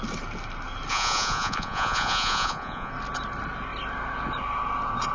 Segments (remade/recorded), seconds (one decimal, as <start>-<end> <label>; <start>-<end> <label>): 0.0-0.9 recorded; 0.9-2.9 remade; 2.9-5.1 recorded